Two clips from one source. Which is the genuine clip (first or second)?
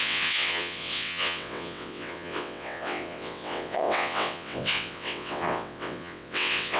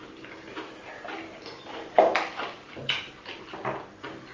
second